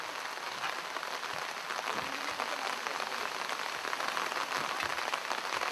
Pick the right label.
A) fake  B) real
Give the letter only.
B